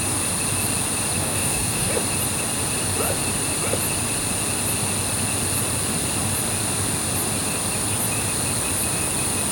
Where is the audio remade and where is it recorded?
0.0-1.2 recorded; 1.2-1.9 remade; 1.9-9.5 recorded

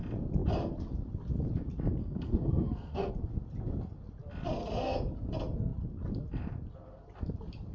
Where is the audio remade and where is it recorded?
0.0-2.0 recorded; 2.0-3.1 remade; 3.1-7.7 recorded

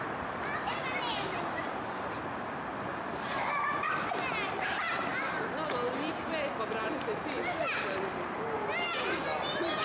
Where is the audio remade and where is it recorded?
0.0-9.8 recorded